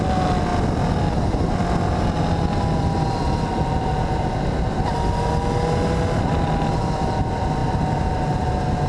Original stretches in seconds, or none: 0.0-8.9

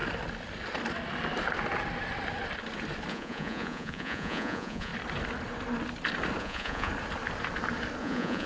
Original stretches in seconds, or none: 0.0-3.1; 4.9-6.4; 6.9-8.0

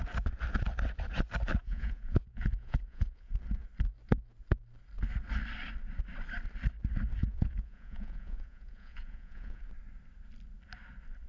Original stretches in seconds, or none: 0.0-1.6; 3.3-7.2; 9.6-11.3

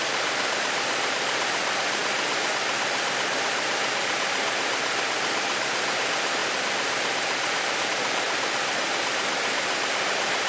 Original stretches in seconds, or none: 0.0-10.5